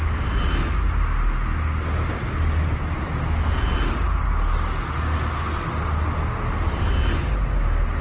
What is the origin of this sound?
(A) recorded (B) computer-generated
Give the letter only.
A